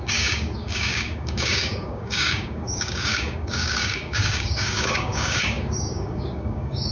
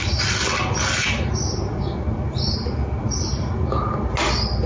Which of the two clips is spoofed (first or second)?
first